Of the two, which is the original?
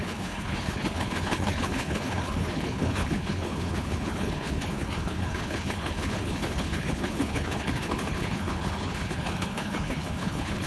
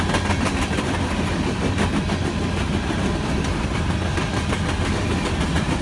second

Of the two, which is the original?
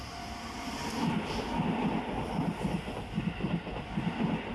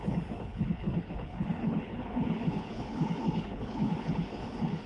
first